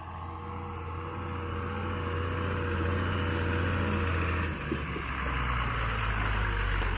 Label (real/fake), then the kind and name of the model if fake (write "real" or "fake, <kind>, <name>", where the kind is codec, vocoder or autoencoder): real